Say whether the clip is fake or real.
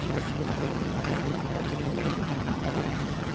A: fake